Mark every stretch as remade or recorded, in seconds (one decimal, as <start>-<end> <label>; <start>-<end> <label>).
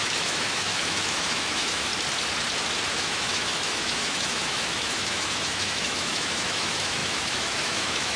0.0-1.9 remade; 1.9-2.9 recorded; 2.9-8.2 remade